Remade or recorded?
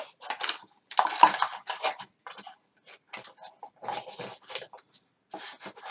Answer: recorded